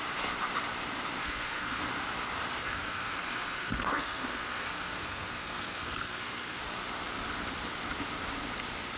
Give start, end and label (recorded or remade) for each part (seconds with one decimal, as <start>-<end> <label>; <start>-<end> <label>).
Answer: 0.0-1.2 recorded; 1.2-1.8 remade; 1.8-2.6 recorded; 2.6-6.6 remade; 6.6-9.0 recorded